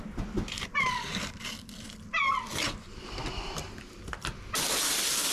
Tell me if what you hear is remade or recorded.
recorded